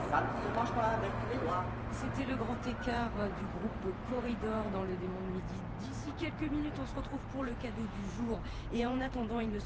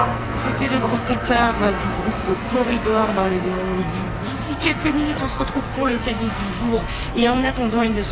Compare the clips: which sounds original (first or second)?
first